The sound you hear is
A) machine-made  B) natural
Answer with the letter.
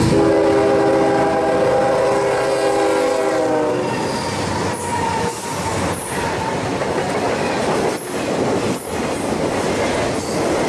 B